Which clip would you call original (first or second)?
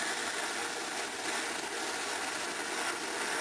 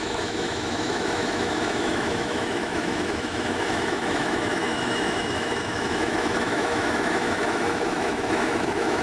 first